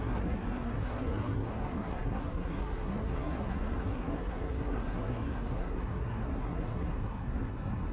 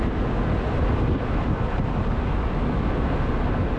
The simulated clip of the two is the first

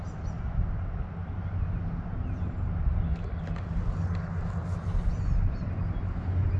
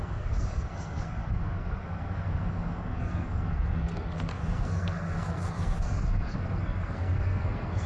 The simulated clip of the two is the second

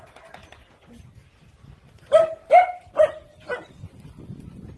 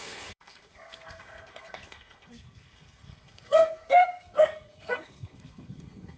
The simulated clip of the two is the second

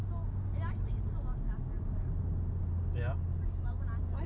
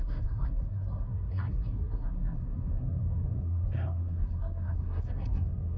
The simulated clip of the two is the second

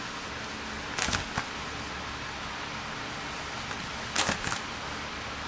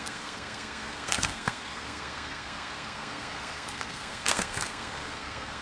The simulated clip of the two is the second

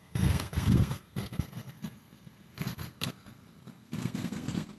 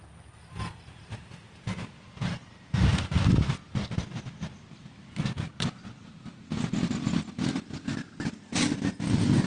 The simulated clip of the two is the first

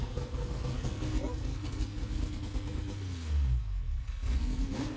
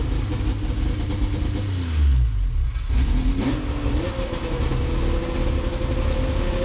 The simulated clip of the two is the first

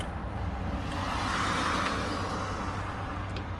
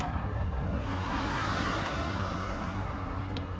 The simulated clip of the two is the second